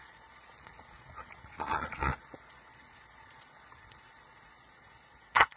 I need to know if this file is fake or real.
fake